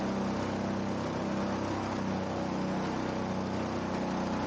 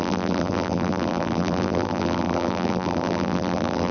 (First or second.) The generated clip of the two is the second